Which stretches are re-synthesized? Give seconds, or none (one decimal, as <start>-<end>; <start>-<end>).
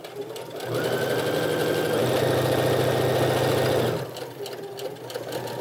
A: none